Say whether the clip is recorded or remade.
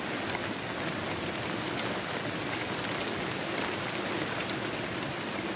recorded